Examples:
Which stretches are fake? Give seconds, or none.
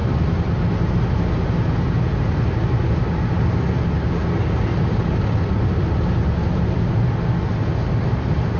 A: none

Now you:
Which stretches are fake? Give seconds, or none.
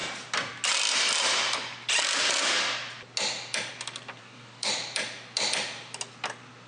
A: 4.2-4.7 (codec, DAC)